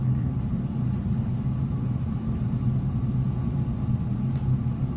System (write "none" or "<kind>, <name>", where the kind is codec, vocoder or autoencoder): none